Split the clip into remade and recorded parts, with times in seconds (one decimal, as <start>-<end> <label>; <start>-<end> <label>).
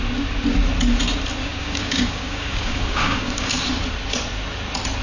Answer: 0.0-1.4 recorded; 1.4-3.5 remade; 3.5-5.0 recorded